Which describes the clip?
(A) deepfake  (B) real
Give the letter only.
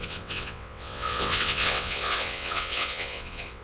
A